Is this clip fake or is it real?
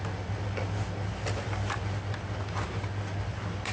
real